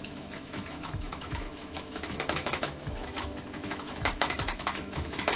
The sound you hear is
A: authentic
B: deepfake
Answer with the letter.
B